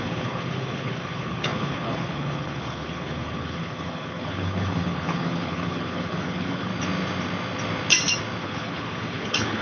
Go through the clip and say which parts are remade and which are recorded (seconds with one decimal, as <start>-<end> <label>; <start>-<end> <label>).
0.0-6.7 remade; 6.7-8.4 recorded; 8.4-9.6 remade